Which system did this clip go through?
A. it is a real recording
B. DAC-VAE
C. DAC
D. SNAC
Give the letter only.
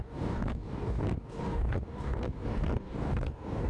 C